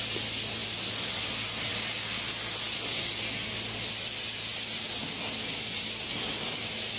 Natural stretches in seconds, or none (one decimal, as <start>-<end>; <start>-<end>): 0.0-7.0